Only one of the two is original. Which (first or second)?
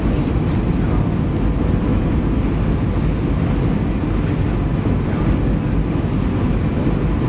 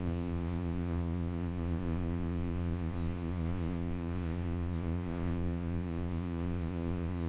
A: first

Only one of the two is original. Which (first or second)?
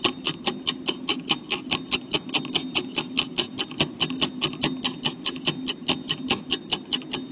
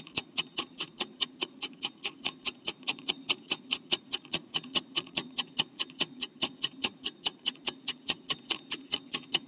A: first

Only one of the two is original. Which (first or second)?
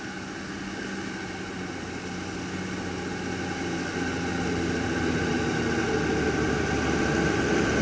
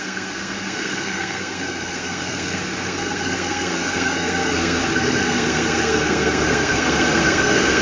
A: first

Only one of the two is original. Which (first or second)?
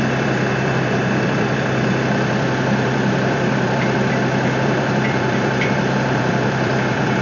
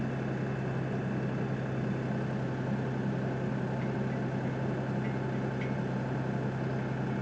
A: second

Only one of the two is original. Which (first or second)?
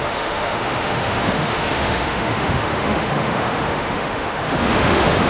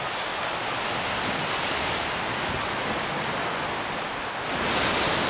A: second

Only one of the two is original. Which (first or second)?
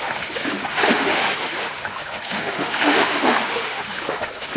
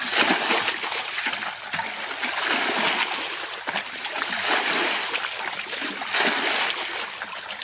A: second